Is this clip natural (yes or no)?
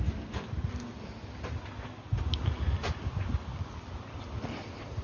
yes